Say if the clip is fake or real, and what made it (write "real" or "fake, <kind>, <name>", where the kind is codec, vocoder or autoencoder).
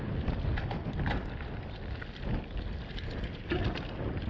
real